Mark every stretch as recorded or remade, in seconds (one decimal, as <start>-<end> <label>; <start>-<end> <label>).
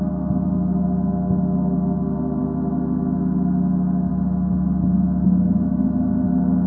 0.0-6.7 recorded